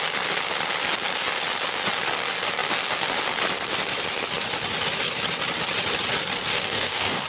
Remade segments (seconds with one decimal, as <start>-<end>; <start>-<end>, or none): 6.5-7.3